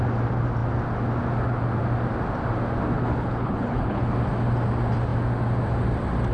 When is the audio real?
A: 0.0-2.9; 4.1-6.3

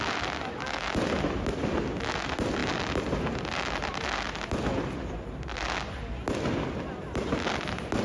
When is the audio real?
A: 0.0-8.0

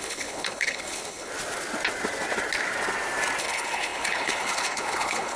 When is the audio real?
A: 1.3-3.4

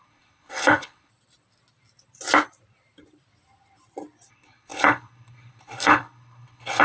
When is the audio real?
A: 1.1-4.3

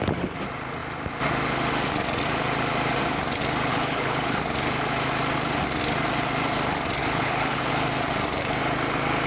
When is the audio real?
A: 0.0-3.7; 4.4-7.0; 7.7-9.3

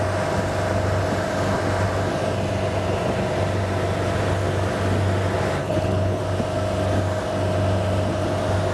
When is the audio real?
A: 0.0-5.6; 6.2-8.7

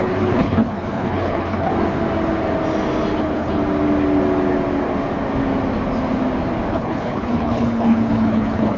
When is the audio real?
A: 1.7-3.2; 3.6-6.7